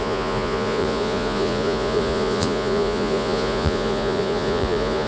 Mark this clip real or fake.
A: fake